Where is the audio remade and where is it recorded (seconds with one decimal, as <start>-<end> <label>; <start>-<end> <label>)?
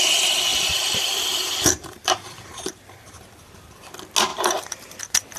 0.0-0.5 recorded; 0.5-3.7 remade; 3.7-4.3 recorded; 4.3-5.0 remade; 5.0-5.4 recorded